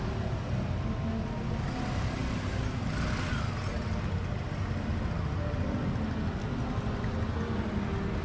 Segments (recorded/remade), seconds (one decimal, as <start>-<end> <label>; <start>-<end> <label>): 0.0-8.2 recorded